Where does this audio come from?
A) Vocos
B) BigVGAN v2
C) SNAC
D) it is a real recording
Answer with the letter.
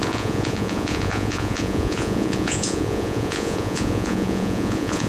A